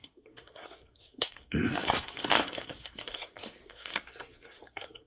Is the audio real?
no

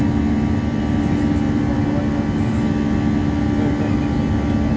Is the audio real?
yes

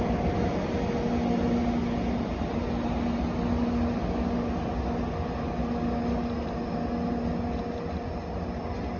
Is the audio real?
yes